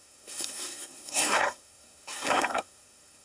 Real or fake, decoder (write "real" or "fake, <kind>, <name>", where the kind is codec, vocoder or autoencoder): fake, codec, SNAC